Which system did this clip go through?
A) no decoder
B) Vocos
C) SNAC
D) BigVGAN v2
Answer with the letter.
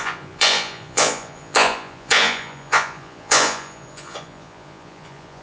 B